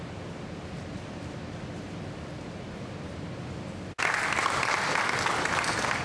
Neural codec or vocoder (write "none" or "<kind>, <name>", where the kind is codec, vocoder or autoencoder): none